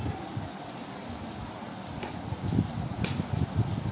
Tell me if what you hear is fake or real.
fake